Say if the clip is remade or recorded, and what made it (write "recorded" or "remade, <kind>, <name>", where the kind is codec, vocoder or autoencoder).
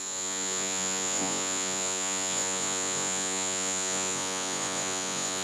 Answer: remade, vocoder, Vocos